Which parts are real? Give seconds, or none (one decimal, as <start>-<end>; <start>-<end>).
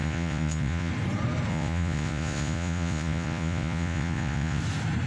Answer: 0.9-1.5; 4.6-5.1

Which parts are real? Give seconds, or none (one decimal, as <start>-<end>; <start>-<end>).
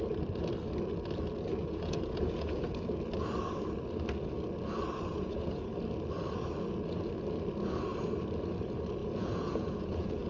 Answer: 0.0-1.6; 2.9-5.1; 5.7-9.0